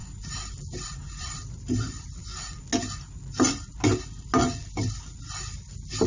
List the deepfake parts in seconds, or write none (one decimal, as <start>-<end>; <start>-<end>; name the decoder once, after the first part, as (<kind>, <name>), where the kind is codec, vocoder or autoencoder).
1.2-2.2 (vocoder, BigVGAN v2)

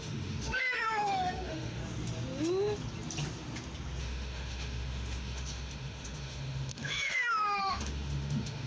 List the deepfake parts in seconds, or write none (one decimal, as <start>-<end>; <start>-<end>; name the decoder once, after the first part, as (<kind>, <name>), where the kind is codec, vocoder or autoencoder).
0.0-1.8 (autoencoder, DAC-VAE); 4.0-8.7

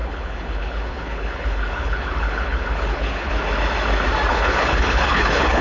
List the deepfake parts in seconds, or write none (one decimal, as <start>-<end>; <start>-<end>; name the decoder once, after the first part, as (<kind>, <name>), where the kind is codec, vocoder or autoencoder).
0.0-3.3 (codec, HILCodec); 4.3-5.6

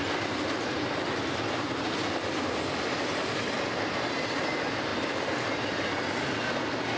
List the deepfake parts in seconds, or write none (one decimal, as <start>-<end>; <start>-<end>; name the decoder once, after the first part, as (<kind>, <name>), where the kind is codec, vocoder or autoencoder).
none

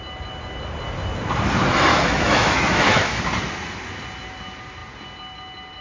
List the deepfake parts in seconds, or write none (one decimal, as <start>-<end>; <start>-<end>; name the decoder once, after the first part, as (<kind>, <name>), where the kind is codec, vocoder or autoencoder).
1.9-3.2 (autoencoder, DAC-VAE)

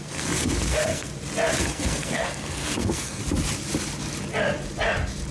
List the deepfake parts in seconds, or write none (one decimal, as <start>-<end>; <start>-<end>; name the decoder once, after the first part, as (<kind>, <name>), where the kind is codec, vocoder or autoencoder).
0.0-1.1 (codec, SNAC); 1.6-3.2

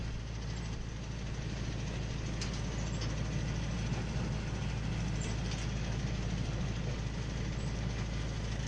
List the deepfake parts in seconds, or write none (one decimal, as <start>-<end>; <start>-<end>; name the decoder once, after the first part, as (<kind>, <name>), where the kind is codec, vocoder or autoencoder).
none